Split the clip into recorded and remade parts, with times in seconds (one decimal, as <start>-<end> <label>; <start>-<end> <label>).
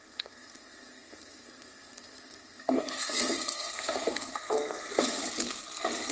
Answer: 0.0-5.2 remade; 5.2-6.1 recorded